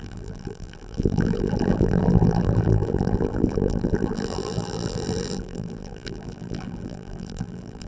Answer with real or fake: fake